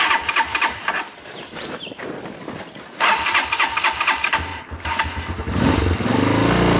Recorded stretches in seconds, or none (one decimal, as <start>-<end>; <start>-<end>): 0.0-0.5; 2.2-4.5; 5.8-6.8